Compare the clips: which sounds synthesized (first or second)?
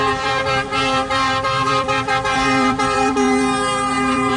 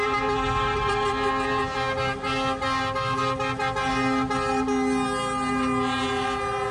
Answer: first